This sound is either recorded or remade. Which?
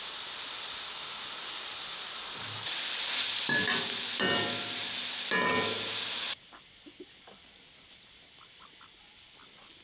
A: recorded